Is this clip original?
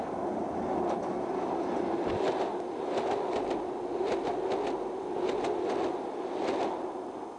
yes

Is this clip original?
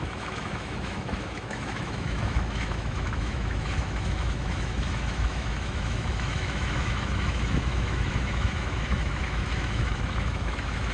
no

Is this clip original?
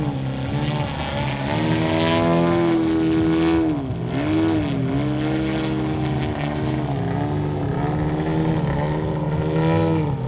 yes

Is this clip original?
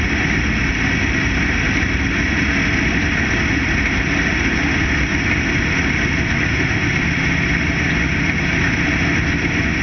yes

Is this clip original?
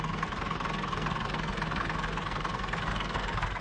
no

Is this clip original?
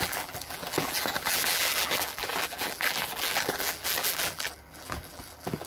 no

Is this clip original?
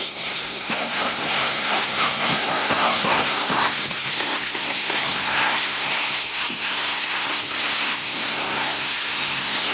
no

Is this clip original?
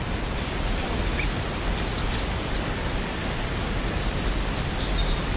yes